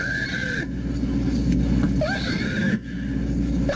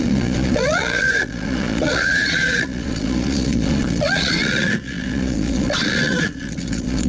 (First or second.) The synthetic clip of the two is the second